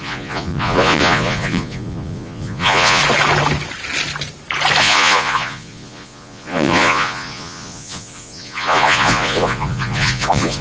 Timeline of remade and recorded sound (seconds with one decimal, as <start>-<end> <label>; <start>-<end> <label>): 0.0-3.0 remade; 3.0-4.8 recorded; 4.8-10.6 remade